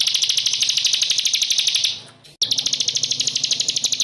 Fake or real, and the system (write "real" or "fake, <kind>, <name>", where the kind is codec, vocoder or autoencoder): real